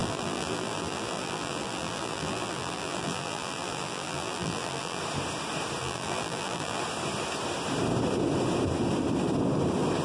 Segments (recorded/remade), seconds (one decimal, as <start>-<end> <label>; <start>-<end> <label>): 0.0-5.0 remade; 5.0-5.8 recorded; 5.8-6.8 remade; 6.8-10.0 recorded